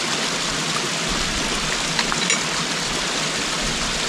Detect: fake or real real